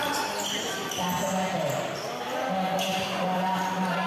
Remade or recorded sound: recorded